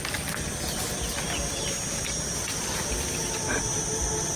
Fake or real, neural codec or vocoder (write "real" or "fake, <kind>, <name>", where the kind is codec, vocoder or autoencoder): real